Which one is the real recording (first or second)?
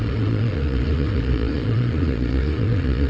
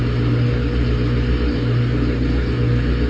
second